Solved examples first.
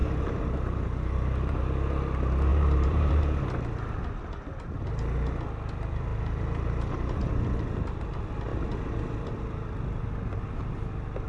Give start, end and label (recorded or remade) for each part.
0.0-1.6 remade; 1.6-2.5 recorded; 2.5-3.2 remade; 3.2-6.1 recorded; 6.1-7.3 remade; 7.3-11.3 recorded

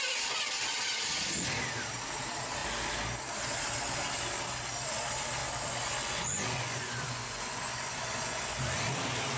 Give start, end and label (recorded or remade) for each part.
0.0-5.4 recorded; 5.4-8.6 remade; 8.6-9.4 recorded

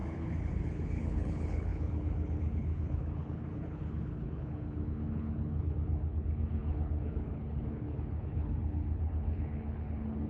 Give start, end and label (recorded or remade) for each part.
0.0-10.3 remade

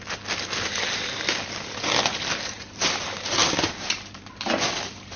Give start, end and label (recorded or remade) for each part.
0.0-2.5 recorded; 2.5-5.2 remade

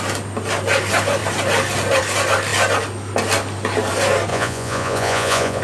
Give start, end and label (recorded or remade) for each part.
0.0-4.3 recorded; 4.3-5.6 remade

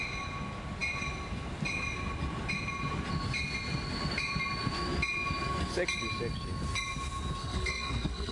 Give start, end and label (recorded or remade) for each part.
0.0-7.4 recorded; 7.4-8.3 remade

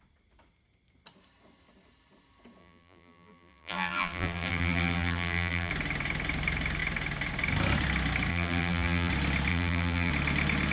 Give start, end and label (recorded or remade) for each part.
0.0-2.6 recorded; 2.6-5.7 remade; 5.7-8.3 recorded; 8.3-9.1 remade; 9.1-9.5 recorded; 9.5-10.1 remade; 10.1-10.7 recorded

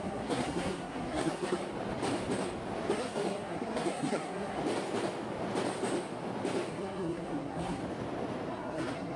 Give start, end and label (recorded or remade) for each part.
0.0-1.6 remade; 1.6-2.9 recorded; 2.9-4.6 remade; 4.6-6.7 recorded; 6.7-7.8 remade; 7.8-8.5 recorded; 8.5-9.2 remade